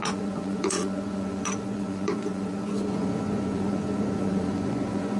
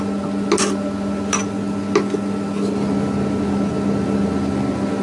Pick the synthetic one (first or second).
first